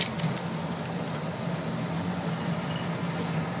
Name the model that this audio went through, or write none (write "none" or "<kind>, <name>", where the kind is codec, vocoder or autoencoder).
none